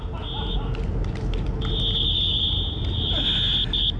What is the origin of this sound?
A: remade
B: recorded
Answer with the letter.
B